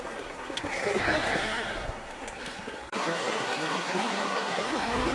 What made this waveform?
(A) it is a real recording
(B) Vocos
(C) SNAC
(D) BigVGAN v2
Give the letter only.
C